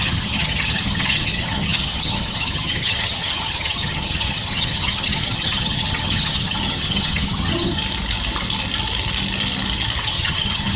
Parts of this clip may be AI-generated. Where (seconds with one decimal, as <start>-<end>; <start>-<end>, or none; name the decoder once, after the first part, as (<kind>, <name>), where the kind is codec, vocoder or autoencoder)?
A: 0.0-7.8 (vocoder, HiFi-GAN); 10.0-10.8